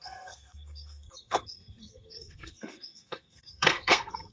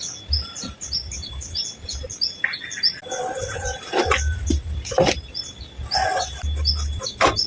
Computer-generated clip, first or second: first